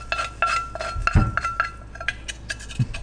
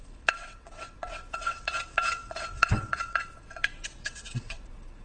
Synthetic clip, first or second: second